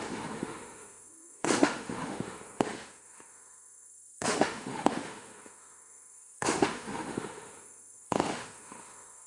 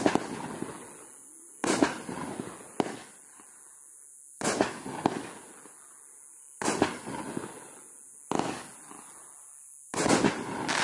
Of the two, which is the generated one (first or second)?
first